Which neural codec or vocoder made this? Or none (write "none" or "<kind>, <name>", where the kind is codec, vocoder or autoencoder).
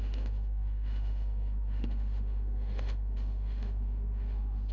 autoencoder, DAC-VAE